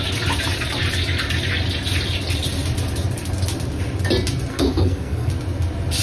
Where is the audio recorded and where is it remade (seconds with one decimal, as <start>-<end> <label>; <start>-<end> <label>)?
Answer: 0.0-4.5 recorded; 4.5-5.3 remade; 5.3-6.0 recorded